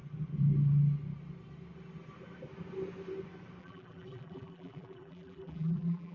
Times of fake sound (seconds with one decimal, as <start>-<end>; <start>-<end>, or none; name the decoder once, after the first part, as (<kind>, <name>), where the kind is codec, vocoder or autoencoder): 3.6-6.1 (vocoder, BigVGAN v2)

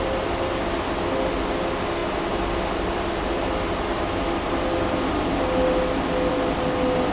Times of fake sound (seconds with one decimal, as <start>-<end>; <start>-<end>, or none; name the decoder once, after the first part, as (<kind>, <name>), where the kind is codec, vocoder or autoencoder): none

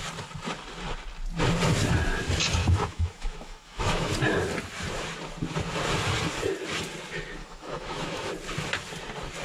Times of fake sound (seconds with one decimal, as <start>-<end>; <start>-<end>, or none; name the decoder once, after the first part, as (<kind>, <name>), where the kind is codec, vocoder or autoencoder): 2.6-4.1 (autoencoder, DAC-VAE); 7.4-8.3

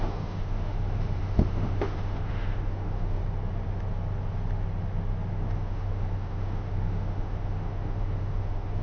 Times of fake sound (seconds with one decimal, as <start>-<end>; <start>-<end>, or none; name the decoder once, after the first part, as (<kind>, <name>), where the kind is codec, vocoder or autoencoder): 0.0-3.2 (autoencoder, DAC-VAE); 5.3-8.8

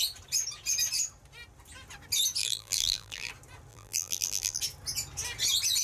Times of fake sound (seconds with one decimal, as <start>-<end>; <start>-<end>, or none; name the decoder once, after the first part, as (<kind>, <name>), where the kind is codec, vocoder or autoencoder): 2.4-3.3 (vocoder, BigVGAN v2); 3.7-4.6